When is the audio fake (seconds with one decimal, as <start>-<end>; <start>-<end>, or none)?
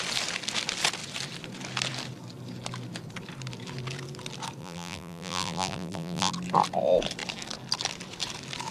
4.6-6.3